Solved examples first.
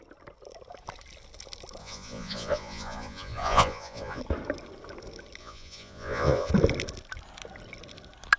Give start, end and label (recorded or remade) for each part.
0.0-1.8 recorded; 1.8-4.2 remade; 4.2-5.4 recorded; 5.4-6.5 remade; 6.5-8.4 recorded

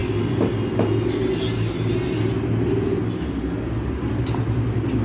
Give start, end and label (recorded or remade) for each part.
0.0-5.0 recorded

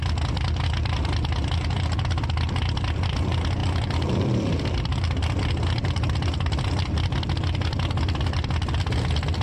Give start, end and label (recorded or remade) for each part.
0.0-3.6 recorded; 3.6-7.3 remade; 7.3-9.4 recorded

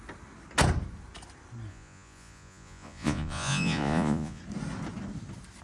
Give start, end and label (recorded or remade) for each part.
0.0-1.7 recorded; 1.7-4.4 remade; 4.4-5.6 recorded

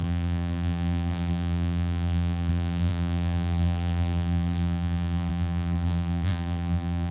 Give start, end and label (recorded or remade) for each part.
0.0-7.1 remade

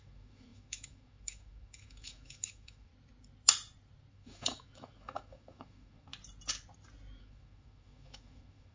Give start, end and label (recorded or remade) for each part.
0.0-2.9 remade; 2.9-4.1 recorded; 4.1-6.1 remade; 6.1-7.2 recorded; 7.2-8.7 remade

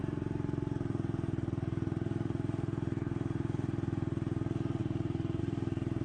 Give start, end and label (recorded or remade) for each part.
0.0-6.0 remade

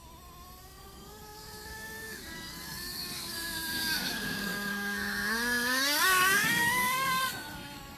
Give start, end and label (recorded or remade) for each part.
0.0-0.6 recorded; 0.6-8.0 remade